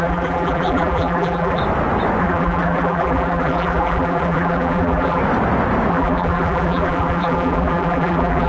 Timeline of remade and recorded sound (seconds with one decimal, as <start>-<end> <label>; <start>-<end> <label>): 0.0-1.6 remade; 1.6-2.2 recorded; 2.2-5.2 remade; 5.2-5.9 recorded; 5.9-8.5 remade